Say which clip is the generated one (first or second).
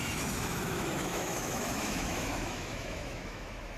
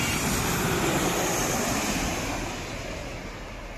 first